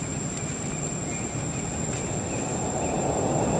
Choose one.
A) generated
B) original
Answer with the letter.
B